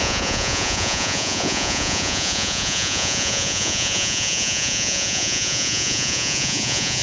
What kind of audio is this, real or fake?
fake